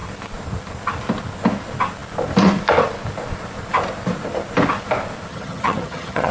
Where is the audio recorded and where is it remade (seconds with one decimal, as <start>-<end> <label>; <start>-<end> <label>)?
0.0-5.3 recorded; 5.3-6.3 remade